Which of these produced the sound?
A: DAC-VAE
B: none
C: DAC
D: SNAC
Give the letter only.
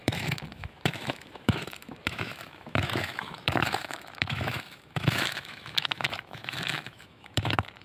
A